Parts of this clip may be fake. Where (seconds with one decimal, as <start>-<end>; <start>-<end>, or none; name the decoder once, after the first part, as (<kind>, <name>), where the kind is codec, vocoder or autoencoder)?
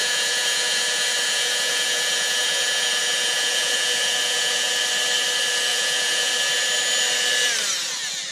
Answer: 0.0-4.7 (vocoder, Vocos); 5.7-6.3